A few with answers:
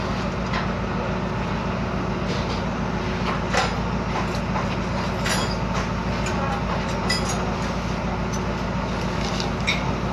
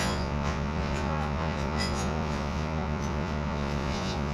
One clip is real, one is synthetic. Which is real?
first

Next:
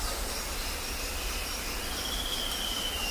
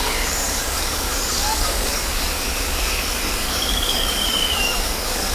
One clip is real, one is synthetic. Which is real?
first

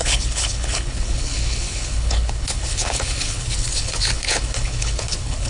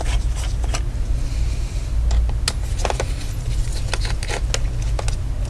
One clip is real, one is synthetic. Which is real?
second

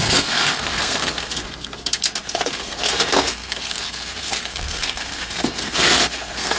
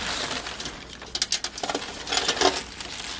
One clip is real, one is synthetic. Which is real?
second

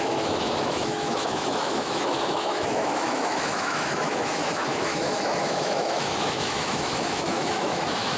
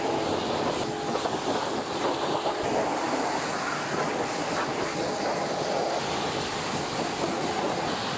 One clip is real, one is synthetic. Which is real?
second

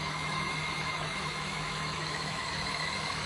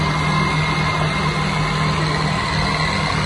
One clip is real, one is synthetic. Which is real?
second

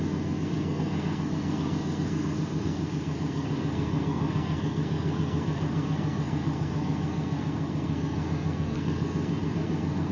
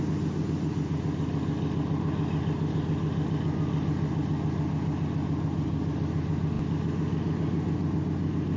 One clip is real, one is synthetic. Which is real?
second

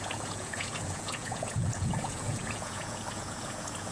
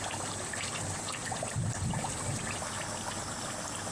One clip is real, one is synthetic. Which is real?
second